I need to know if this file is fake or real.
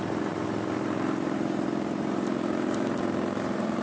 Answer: fake